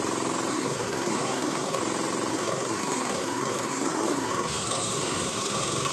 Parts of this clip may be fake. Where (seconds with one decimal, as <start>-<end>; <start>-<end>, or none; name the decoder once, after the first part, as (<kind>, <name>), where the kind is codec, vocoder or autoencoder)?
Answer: 0.5-1.8 (codec, SNAC); 2.3-5.9